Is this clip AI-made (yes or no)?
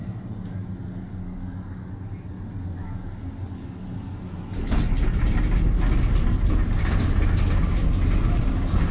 no